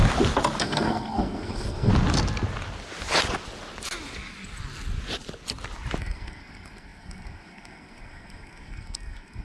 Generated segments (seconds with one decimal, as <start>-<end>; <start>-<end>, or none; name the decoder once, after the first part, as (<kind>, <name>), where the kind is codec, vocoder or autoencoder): 0.6-1.9 (codec, SNAC); 6.0-9.4